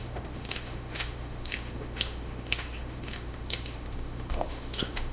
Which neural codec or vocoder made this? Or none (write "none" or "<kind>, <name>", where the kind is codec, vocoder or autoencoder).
autoencoder, DAC-VAE